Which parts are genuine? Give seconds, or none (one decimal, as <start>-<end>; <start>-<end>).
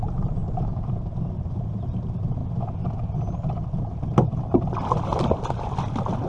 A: 2.4-6.3